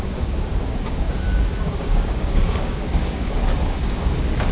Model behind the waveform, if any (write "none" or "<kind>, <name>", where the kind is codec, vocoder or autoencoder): codec, DAC